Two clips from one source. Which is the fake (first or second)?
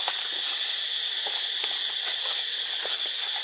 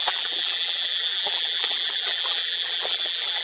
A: second